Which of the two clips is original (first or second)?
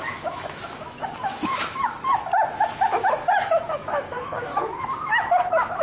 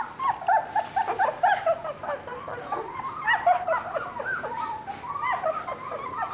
second